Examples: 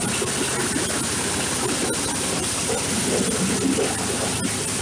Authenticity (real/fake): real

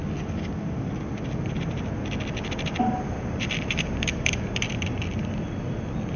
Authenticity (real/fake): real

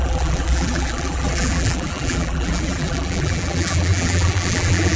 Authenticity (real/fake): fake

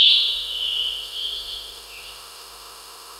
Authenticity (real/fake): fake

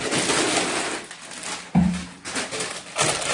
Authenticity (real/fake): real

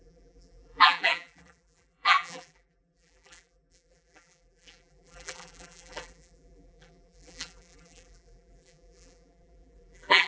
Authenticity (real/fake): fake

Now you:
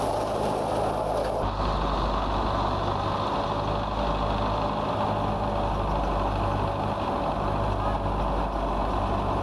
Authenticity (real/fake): real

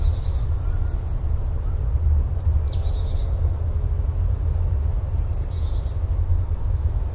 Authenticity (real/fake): real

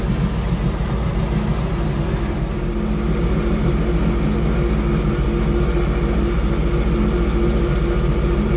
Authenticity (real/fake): real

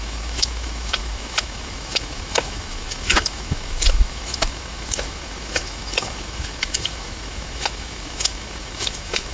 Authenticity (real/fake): fake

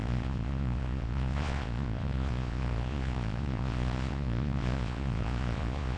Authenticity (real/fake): fake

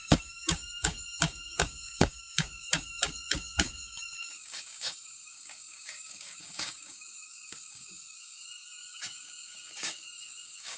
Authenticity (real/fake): fake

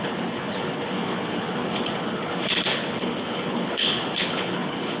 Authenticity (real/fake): fake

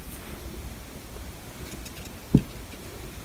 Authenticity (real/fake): fake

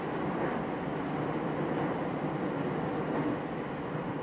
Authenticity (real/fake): real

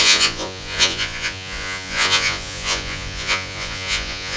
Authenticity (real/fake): fake